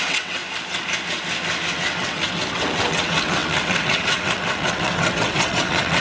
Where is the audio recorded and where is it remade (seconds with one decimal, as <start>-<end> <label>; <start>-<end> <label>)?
0.0-0.4 remade; 0.4-1.7 recorded; 1.7-6.0 remade